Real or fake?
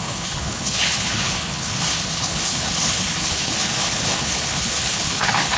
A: fake